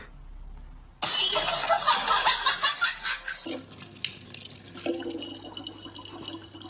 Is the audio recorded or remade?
recorded